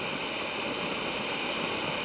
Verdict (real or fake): real